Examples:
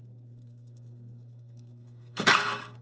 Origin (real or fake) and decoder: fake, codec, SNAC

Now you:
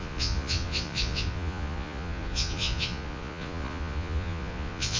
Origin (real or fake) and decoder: fake, vocoder, Vocos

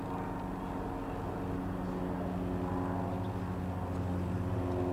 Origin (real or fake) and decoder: real